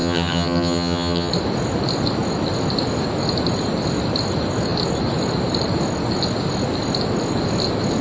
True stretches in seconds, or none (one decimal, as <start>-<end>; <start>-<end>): 1.3-8.0